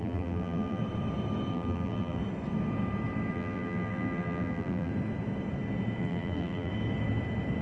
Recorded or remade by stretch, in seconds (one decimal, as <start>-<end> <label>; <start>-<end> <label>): 0.0-0.8 remade; 0.8-1.5 recorded; 1.5-2.2 remade; 2.2-3.3 recorded; 3.3-4.9 remade; 4.9-6.0 recorded; 6.0-6.7 remade; 6.7-7.6 recorded